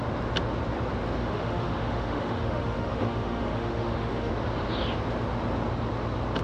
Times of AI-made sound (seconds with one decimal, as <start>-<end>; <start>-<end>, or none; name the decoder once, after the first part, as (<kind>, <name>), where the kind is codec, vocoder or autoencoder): 1.2-4.3 (autoencoder, DAC-VAE)